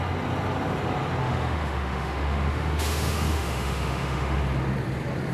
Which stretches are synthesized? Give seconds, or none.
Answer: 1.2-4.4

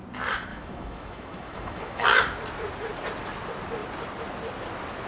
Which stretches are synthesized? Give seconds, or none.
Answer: 0.5-2.2

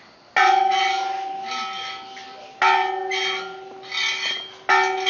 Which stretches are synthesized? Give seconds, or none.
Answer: none

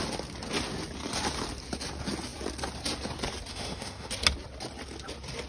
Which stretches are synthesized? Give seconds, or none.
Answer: 3.5-4.1

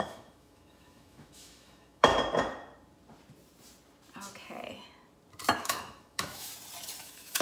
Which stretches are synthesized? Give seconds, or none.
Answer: 0.0-2.1; 5.6-6.5; 7.0-7.4

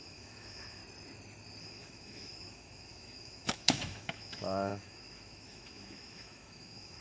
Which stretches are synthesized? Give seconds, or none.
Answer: 0.0-0.8; 1.6-7.0